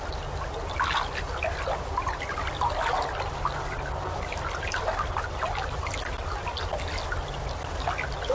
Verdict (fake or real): real